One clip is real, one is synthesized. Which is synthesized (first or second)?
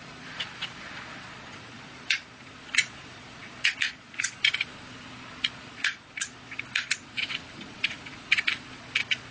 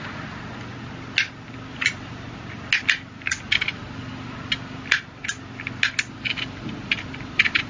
first